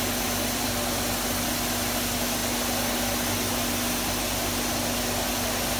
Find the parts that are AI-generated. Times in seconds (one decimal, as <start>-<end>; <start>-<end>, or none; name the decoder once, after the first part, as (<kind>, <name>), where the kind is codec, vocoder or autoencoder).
none